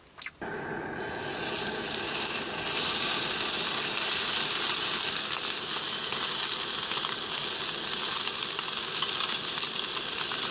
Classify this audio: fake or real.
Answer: real